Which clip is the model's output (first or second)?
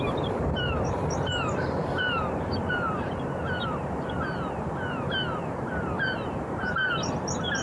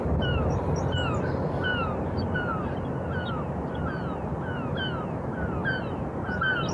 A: first